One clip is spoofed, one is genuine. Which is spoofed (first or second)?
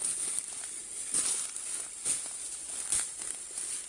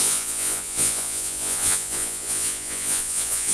second